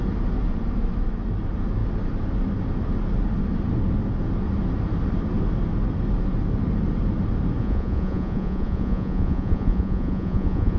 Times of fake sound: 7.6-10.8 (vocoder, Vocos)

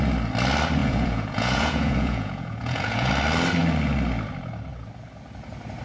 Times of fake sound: 0.8-3.1 (vocoder, Vocos)

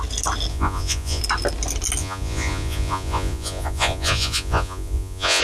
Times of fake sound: 0.5-1.2 (vocoder, Vocos); 2.0-5.4

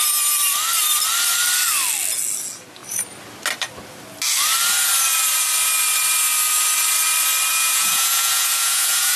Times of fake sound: 7.5-9.2 (vocoder, Vocos)